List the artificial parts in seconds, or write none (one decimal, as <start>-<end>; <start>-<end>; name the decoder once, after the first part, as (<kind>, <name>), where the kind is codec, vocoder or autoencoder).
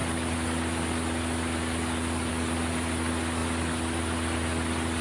none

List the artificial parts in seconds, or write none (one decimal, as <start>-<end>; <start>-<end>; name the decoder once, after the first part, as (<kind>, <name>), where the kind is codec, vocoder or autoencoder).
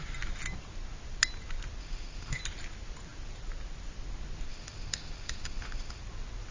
1.8-2.4 (autoencoder, DAC-VAE); 4.5-6.0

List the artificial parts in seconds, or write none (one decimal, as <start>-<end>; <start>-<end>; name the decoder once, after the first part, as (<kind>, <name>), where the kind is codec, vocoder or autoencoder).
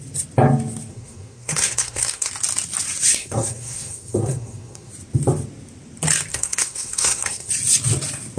0.9-2.3 (codec, SNAC); 3.2-4.9; 6.3-7.5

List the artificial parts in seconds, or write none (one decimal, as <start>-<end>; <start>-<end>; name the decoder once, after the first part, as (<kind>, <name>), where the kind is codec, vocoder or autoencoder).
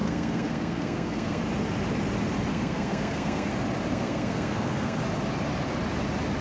0.0-1.4 (codec, SNAC); 2.5-3.5; 3.9-5.0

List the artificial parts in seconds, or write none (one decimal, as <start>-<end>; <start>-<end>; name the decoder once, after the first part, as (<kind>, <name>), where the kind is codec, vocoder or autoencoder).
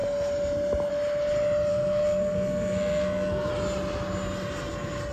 1.7-3.5 (codec, SNAC)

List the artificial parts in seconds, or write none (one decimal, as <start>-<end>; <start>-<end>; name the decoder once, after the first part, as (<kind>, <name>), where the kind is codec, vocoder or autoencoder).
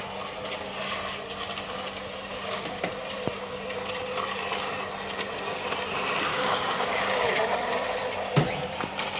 2.3-2.8 (codec, DAC); 6.3-7.3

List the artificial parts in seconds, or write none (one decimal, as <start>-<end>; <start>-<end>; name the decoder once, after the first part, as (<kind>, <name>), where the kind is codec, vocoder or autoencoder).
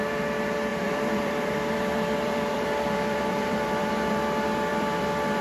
0.7-3.9 (vocoder, BigVGAN v2); 4.7-5.4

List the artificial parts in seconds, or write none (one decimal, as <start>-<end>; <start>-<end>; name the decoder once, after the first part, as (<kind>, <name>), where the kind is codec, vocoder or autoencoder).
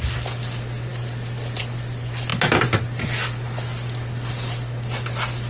none